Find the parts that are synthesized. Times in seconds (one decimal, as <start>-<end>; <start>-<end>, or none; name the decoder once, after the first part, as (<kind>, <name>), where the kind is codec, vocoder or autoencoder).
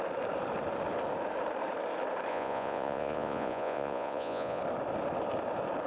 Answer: 2.3-4.6 (vocoder, Vocos)